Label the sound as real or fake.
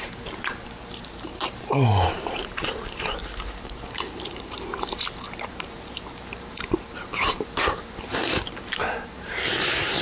fake